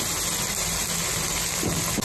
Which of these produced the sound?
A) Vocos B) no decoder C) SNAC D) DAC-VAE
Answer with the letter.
B